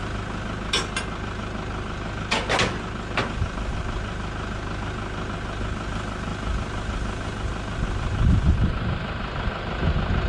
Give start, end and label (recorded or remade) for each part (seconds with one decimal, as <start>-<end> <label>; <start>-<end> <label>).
0.0-10.3 recorded